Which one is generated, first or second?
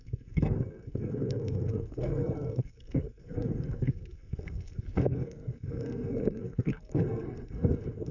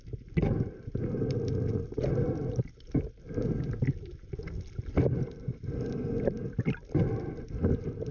first